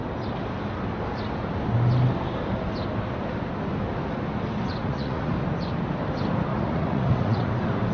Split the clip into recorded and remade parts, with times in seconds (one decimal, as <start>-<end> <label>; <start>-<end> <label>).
0.0-4.8 recorded; 4.8-5.3 remade; 5.3-6.5 recorded; 6.5-7.5 remade; 7.5-7.9 recorded